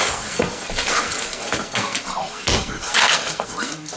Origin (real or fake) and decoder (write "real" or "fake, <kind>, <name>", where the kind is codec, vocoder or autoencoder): fake, codec, SNAC